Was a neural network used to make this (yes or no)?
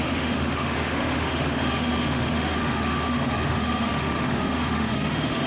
yes